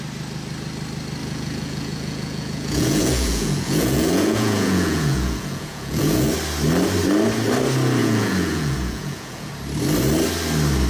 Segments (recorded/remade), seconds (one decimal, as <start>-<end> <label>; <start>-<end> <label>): 0.0-1.2 recorded; 1.2-6.3 remade; 6.3-8.0 recorded; 8.0-9.5 remade; 9.5-10.9 recorded